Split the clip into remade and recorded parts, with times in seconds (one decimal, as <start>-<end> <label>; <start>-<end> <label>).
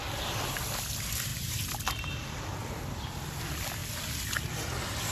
0.0-0.6 recorded; 0.6-5.1 remade